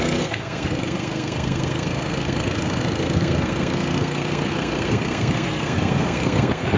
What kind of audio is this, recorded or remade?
remade